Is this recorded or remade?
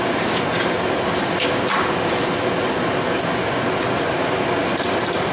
recorded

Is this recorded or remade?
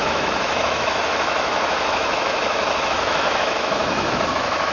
remade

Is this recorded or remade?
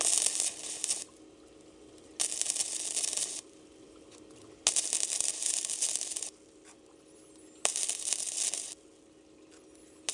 recorded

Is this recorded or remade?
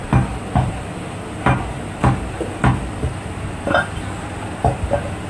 recorded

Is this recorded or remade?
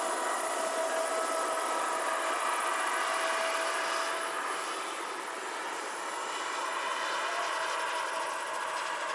recorded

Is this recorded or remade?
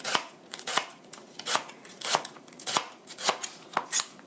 remade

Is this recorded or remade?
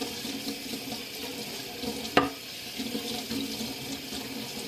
recorded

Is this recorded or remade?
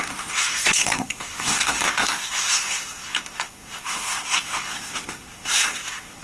remade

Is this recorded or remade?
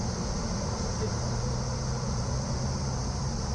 remade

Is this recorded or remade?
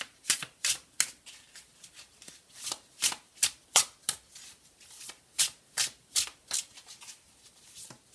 recorded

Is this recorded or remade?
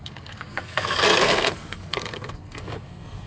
remade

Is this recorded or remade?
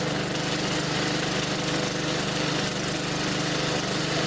recorded